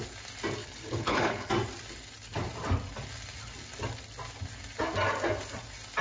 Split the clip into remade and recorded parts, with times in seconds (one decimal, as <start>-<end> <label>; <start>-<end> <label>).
0.0-0.6 recorded; 0.6-1.5 remade; 1.5-6.0 recorded

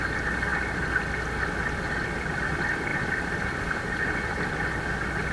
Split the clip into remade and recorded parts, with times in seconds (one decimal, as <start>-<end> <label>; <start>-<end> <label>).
0.0-2.9 recorded; 2.9-4.0 remade; 4.0-5.3 recorded

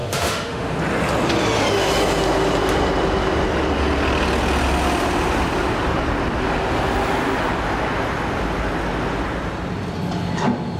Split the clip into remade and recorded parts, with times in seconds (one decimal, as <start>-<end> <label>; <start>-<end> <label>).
0.0-0.8 remade; 0.8-10.8 recorded

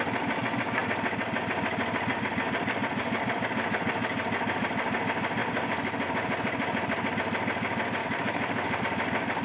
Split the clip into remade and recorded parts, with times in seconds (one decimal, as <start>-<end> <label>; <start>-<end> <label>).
0.0-8.0 recorded; 8.0-8.8 remade; 8.8-9.4 recorded

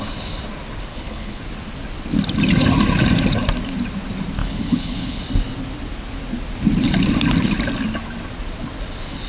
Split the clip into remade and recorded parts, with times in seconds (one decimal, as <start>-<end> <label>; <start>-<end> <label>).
0.0-0.9 recorded; 0.9-1.4 remade; 1.4-4.4 recorded; 4.4-5.2 remade; 5.2-9.3 recorded

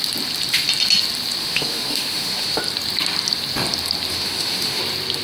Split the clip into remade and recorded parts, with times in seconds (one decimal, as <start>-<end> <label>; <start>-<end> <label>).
0.0-1.4 recorded; 1.4-2.6 remade; 2.6-4.1 recorded; 4.1-4.8 remade; 4.8-5.2 recorded